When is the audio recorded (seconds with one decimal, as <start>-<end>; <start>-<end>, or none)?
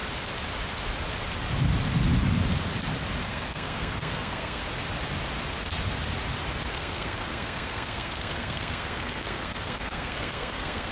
0.0-3.3; 4.6-6.7